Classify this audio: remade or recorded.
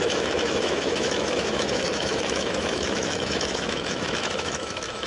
remade